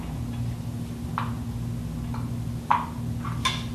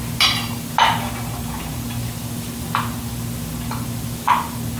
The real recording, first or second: first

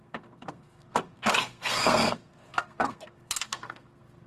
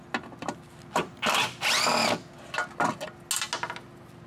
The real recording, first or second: second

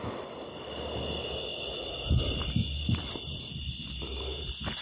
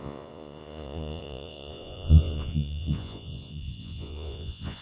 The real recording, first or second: first